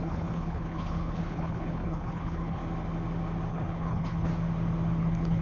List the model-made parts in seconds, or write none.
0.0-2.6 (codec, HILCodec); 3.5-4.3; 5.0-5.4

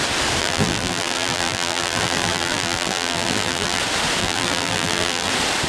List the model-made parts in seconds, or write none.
0.4-3.8 (vocoder, BigVGAN v2); 4.2-5.3

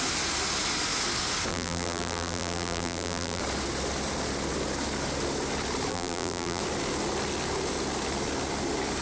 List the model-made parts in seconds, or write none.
1.5-3.4 (vocoder, BigVGAN v2); 5.9-6.6